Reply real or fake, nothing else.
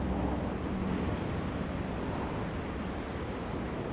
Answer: real